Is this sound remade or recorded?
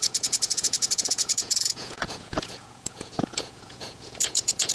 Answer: remade